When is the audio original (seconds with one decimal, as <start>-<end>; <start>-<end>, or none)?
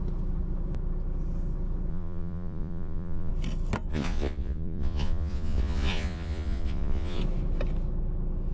0.0-1.9; 3.3-3.9; 7.2-8.5